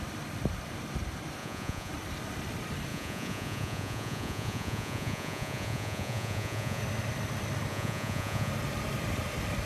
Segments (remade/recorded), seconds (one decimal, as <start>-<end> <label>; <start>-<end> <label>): 0.0-1.4 recorded; 1.4-1.9 remade; 1.9-2.9 recorded; 2.9-6.8 remade; 6.8-7.7 recorded; 7.7-8.5 remade; 8.5-9.7 recorded